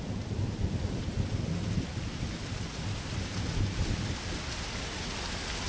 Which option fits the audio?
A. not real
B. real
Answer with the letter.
B